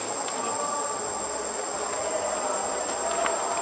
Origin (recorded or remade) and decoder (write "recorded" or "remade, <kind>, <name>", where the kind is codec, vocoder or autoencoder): recorded